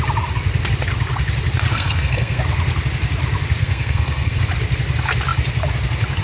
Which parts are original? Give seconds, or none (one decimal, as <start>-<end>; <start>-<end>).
0.0-1.7; 2.4-3.6; 4.4-6.2